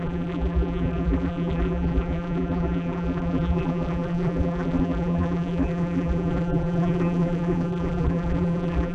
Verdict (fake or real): fake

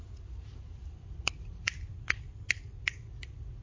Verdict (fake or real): real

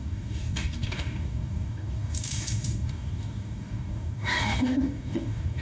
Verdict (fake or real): fake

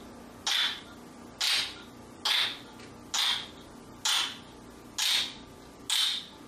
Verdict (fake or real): real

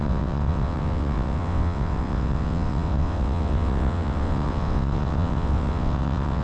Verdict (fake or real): fake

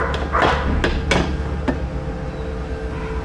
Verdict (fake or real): real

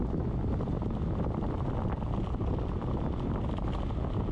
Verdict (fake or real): real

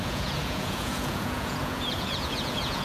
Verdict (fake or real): fake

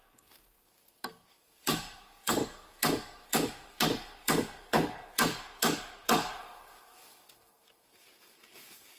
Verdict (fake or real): fake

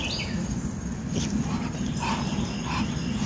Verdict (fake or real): real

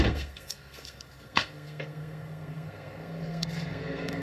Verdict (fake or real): fake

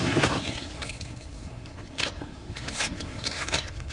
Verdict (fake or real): fake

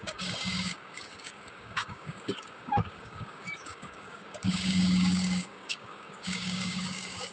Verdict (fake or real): fake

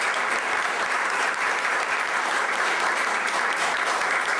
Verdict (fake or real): fake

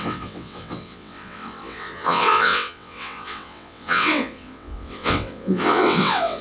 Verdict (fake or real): fake